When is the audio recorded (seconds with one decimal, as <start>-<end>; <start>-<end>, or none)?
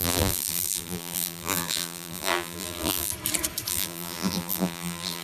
3.1-3.7